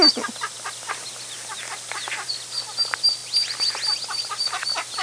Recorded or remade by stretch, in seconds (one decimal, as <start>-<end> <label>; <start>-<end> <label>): 0.0-5.0 recorded